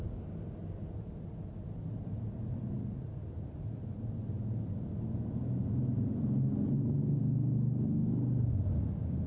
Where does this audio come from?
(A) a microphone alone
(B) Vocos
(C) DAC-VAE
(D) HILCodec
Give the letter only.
A